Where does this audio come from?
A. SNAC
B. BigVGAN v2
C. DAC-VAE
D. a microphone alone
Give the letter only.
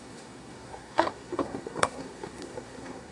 A